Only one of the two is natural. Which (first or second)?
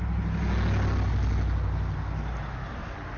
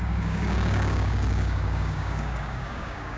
first